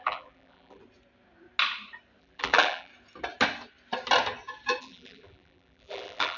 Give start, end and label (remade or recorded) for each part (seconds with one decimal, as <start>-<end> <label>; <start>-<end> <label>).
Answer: 0.0-0.8 remade; 0.8-2.2 recorded; 2.2-2.9 remade; 2.9-4.8 recorded; 4.8-6.4 remade